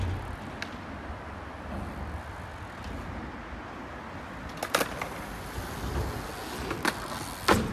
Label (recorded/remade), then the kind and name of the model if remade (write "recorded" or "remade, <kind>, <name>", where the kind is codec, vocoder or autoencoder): recorded